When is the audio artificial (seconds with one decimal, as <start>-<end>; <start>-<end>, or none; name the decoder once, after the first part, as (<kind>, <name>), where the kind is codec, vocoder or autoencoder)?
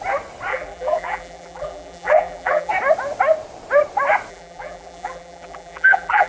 0.5-2.7 (vocoder, BigVGAN v2); 4.3-6.3